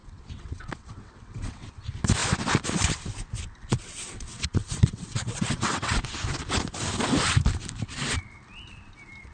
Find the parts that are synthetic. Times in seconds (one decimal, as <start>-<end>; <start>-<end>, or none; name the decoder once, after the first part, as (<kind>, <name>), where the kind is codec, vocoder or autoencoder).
0.0-1.7 (vocoder, WaveNeXt); 3.8-6.0